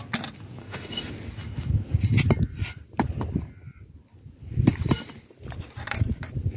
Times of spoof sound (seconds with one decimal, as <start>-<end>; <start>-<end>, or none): 0.6-1.1